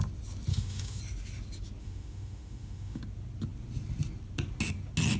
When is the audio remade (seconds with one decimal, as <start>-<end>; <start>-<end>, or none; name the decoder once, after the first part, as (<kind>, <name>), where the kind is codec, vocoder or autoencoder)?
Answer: 0.5-1.0 (autoencoder, DAC-VAE); 1.8-3.0